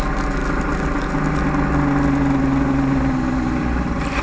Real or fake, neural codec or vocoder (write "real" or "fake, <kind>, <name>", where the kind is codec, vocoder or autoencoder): real